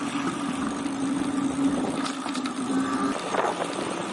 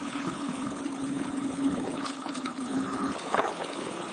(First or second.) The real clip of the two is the first